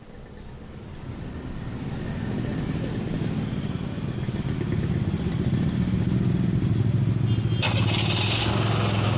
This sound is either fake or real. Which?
real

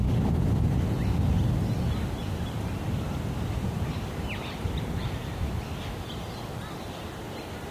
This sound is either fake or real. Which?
real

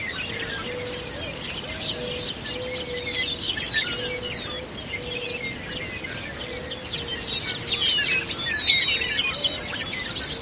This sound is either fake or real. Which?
real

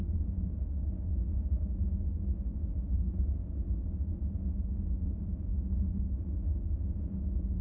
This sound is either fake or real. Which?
real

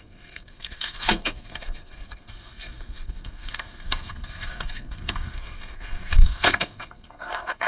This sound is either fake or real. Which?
fake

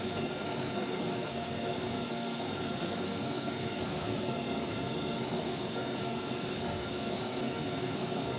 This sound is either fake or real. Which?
fake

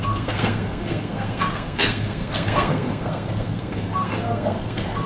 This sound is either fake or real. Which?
fake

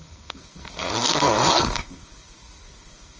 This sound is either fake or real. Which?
fake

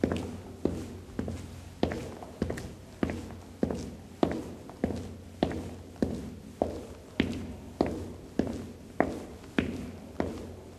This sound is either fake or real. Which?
real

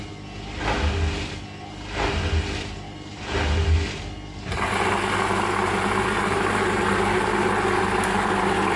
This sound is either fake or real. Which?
real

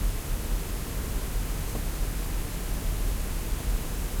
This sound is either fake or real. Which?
real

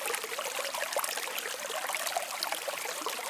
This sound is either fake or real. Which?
real